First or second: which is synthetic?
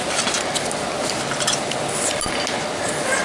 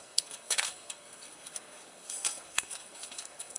second